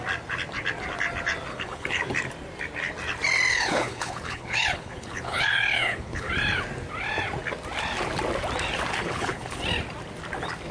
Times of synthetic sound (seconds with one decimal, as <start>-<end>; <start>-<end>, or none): 1.5-2.0; 3.5-6.3; 9.0-9.6